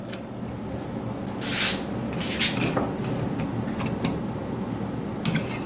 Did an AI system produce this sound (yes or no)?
no